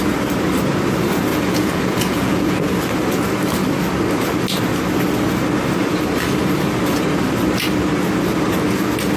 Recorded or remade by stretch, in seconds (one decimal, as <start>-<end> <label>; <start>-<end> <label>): 0.0-1.3 recorded; 1.3-2.7 remade; 2.7-9.2 recorded